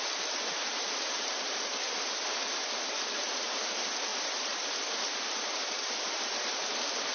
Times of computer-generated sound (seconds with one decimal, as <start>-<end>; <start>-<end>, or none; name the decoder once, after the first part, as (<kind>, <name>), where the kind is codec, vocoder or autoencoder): 0.7-1.9 (vocoder, BigVGAN v2)